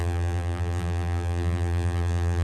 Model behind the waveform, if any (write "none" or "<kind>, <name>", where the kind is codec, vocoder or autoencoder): vocoder, BigVGAN v2